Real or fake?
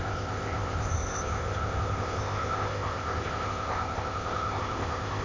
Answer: fake